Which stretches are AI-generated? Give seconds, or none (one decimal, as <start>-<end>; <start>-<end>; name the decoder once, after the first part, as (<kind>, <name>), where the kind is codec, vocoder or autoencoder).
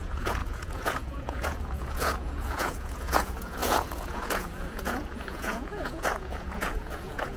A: 0.0-7.4 (vocoder, Vocos)